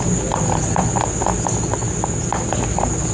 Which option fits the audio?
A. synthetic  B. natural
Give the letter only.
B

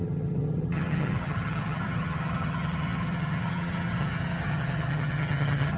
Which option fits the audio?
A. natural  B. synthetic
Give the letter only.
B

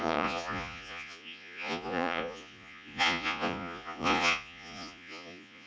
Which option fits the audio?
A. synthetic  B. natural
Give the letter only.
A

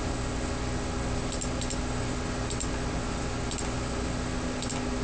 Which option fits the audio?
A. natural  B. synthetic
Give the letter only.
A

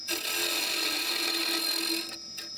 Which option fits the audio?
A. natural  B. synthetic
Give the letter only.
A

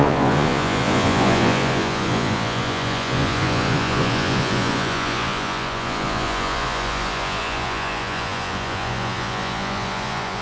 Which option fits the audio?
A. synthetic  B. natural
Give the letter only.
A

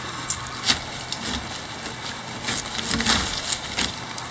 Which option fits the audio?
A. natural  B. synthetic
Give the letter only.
A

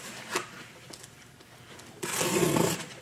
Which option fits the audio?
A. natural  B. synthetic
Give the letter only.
A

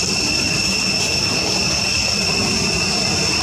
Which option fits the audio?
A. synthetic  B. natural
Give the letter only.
A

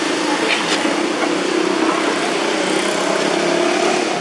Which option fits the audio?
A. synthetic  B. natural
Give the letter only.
B